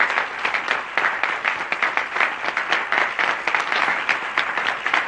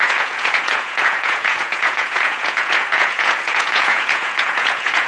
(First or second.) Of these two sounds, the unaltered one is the first